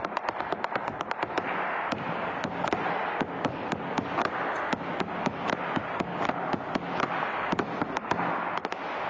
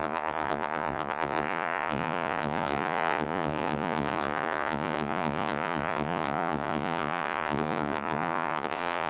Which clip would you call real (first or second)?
first